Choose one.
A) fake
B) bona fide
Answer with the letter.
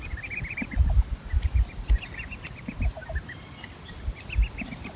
B